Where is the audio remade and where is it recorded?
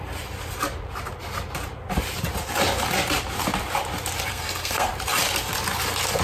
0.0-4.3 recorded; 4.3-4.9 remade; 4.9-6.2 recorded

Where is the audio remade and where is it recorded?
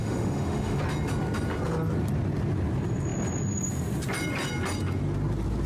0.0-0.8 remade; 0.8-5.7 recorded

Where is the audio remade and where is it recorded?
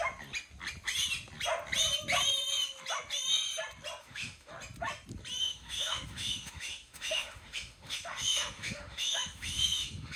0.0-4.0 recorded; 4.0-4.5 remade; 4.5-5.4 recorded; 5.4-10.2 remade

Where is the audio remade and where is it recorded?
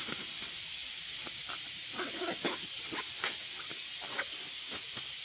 0.0-5.2 recorded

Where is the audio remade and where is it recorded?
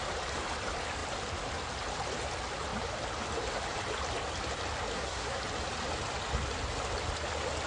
0.0-4.9 recorded; 4.9-5.4 remade; 5.4-7.7 recorded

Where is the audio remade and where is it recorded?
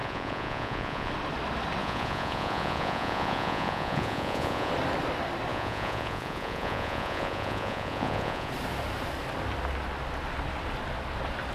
0.0-1.1 remade; 1.1-1.8 recorded; 1.8-4.7 remade; 4.7-5.5 recorded; 5.5-8.5 remade; 8.5-11.5 recorded